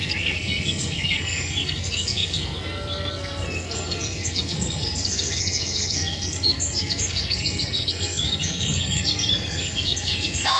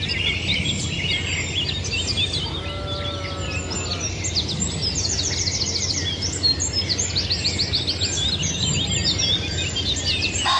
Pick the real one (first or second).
second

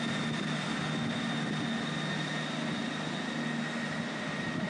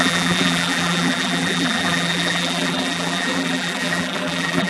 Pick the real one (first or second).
first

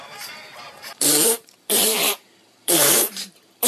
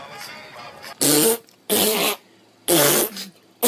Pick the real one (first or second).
second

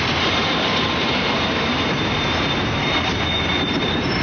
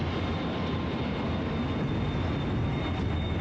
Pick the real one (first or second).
second